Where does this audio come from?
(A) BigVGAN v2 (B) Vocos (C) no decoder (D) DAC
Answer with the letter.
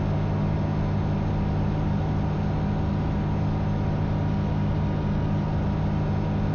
C